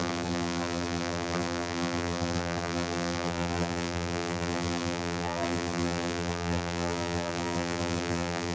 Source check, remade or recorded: remade